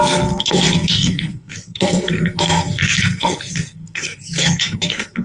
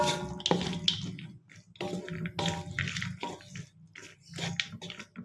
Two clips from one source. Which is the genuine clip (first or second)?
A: second